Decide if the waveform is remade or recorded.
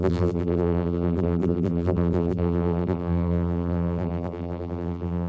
remade